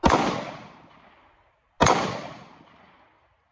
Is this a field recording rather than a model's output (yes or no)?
yes